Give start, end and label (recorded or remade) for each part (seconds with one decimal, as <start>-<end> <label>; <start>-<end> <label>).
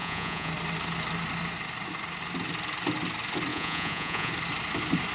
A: 0.0-0.5 remade; 0.5-3.5 recorded; 3.5-4.3 remade; 4.3-5.1 recorded